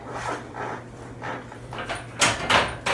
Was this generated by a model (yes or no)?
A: no